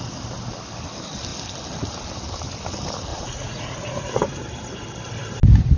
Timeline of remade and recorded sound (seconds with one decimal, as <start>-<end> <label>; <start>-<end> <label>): 0.0-3.1 recorded; 3.1-4.4 remade; 4.4-5.8 recorded